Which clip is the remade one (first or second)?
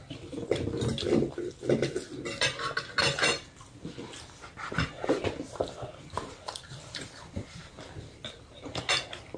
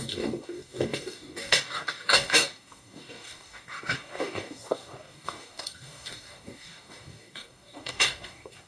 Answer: second